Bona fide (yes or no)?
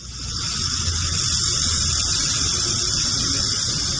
yes